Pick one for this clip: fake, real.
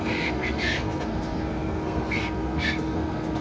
fake